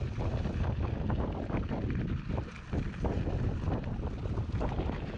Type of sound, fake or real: real